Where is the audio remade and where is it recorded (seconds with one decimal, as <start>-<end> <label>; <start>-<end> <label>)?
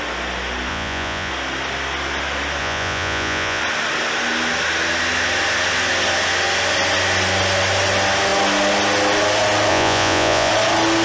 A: 0.0-0.7 recorded; 0.7-1.3 remade; 1.3-2.6 recorded; 2.6-3.6 remade; 3.6-9.7 recorded; 9.7-10.5 remade; 10.5-11.0 recorded